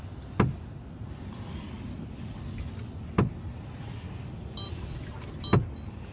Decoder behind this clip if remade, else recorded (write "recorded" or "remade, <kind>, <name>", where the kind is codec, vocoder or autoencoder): recorded